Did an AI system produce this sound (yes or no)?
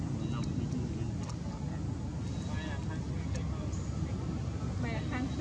no